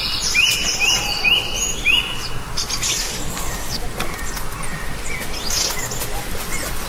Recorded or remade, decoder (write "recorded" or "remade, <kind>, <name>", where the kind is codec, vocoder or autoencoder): recorded